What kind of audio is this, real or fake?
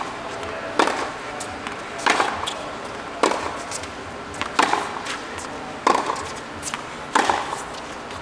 real